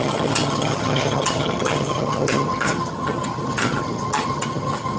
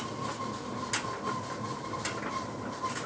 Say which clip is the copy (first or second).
first